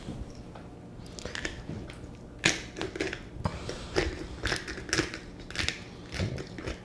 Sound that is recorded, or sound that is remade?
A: recorded